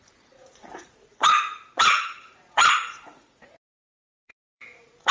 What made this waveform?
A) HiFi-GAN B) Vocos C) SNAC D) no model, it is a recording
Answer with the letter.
B